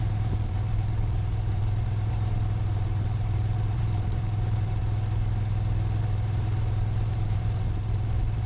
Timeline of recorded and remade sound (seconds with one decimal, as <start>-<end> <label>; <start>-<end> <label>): 0.0-4.8 remade; 4.8-6.0 recorded; 6.0-8.5 remade